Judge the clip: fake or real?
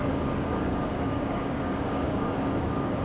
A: fake